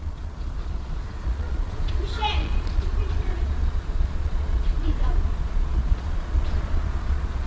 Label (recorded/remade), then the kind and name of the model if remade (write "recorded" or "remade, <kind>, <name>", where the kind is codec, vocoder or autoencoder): remade, vocoder, Vocos